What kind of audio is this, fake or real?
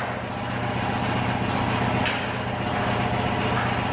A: real